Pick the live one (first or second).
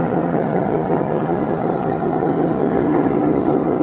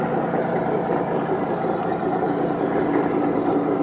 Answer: second